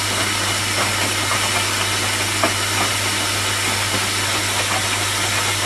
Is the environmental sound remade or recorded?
recorded